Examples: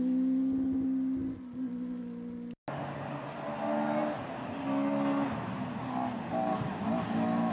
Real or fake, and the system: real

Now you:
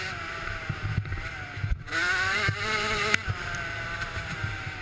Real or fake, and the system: fake, vocoder, BigVGAN v2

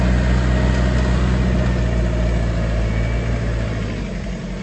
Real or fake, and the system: real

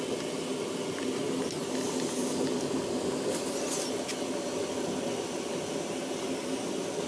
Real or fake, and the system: real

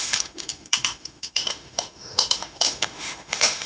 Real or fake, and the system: fake, autoencoder, DAC-VAE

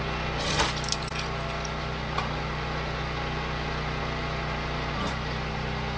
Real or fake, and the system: real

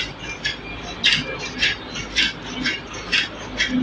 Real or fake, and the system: real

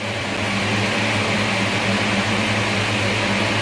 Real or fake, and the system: real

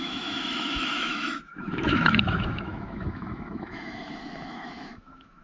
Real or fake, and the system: fake, autoencoder, DAC-VAE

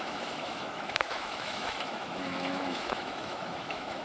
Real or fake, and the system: fake, autoencoder, DAC-VAE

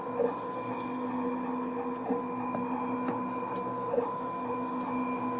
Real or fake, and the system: real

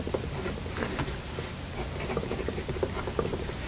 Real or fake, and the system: real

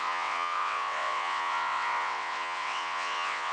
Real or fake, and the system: fake, vocoder, WaveNeXt